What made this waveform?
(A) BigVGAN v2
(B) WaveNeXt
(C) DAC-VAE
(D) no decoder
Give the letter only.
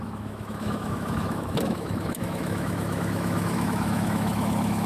C